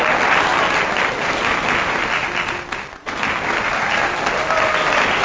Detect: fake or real real